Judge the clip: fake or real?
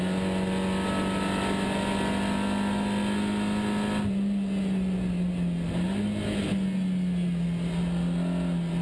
real